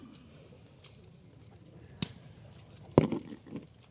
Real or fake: real